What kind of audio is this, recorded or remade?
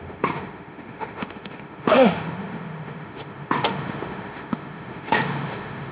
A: remade